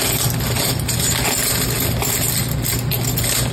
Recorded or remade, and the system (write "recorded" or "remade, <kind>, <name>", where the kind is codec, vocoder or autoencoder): recorded